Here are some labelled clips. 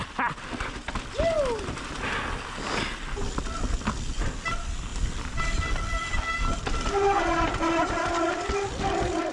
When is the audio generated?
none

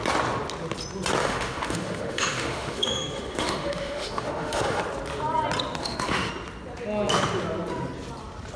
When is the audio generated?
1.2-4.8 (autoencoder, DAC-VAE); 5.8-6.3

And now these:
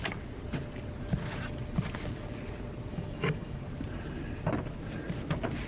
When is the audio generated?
2.9-3.6 (autoencoder, DAC-VAE)

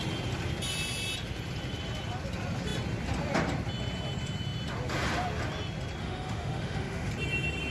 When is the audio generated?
6.0-7.1 (autoencoder, DAC-VAE)